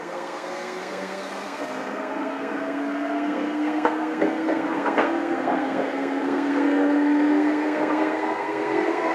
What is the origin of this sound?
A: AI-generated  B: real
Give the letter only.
A